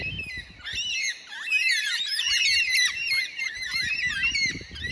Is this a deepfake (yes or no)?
no